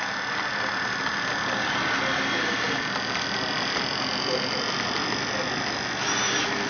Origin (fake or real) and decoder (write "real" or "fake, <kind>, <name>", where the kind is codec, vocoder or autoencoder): real